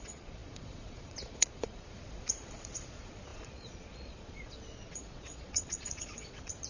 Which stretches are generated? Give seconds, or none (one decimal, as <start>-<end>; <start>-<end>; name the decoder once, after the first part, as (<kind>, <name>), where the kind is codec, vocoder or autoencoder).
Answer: 0.0-6.7 (vocoder, Vocos)